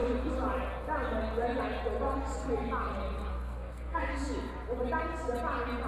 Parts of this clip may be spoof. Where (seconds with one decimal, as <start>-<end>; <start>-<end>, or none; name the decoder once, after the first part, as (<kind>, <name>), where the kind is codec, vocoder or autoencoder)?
3.3-4.1 (codec, SNAC)